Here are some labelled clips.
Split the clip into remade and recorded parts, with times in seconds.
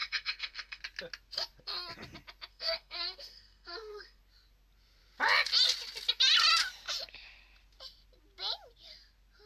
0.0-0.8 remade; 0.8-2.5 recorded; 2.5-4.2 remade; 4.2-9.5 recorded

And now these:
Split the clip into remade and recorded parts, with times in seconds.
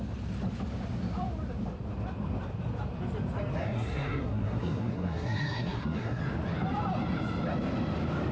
0.0-3.6 recorded; 3.6-6.2 remade; 6.2-8.3 recorded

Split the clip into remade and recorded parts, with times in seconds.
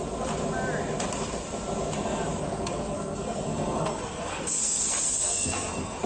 0.0-2.4 recorded; 2.4-6.1 remade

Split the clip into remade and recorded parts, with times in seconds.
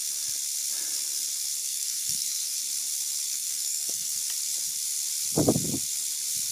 0.0-1.6 recorded; 1.6-2.6 remade; 2.6-3.3 recorded; 3.3-4.2 remade; 4.2-6.5 recorded